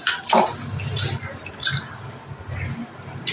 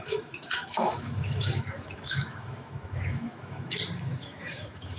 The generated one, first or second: second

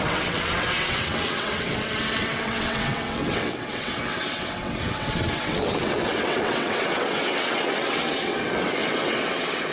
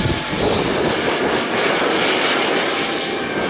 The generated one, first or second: first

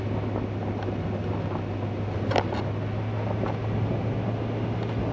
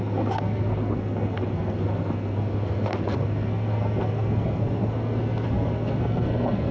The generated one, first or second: second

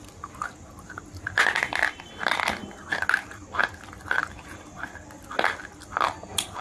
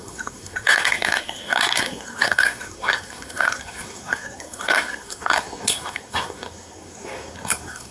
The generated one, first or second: second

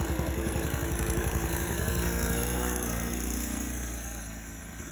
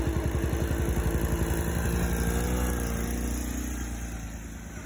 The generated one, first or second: first